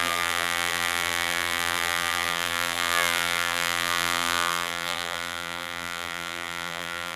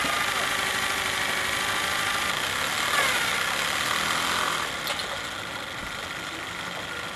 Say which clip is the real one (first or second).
second